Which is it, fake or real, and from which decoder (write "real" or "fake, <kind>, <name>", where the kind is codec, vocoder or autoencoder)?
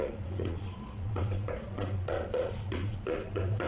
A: fake, vocoder, Vocos